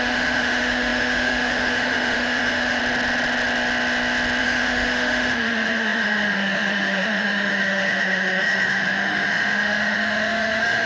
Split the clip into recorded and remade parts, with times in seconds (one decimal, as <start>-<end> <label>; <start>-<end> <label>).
0.0-2.8 remade; 2.8-4.4 recorded; 4.4-10.9 remade